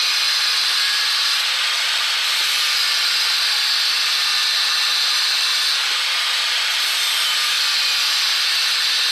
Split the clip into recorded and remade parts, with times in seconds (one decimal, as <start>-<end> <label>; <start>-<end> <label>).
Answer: 0.0-9.1 remade